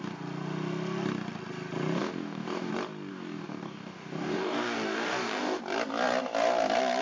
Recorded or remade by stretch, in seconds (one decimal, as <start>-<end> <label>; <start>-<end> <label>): 0.0-2.0 recorded; 2.0-2.7 remade; 2.7-3.1 recorded; 3.1-5.6 remade; 5.6-7.0 recorded